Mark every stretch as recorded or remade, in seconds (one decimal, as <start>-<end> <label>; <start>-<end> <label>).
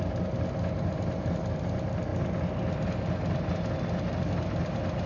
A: 0.0-5.1 recorded